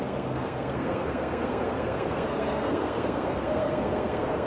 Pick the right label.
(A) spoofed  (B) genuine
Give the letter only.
A